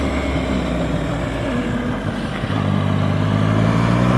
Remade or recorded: recorded